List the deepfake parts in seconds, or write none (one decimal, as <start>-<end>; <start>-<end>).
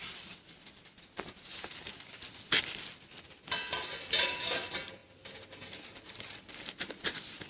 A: none